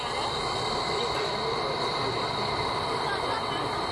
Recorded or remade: recorded